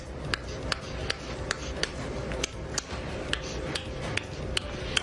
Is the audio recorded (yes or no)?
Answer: yes